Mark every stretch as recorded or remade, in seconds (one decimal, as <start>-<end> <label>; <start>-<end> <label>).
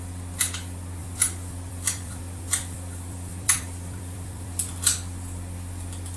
0.0-1.0 recorded; 1.0-4.7 remade; 4.7-6.2 recorded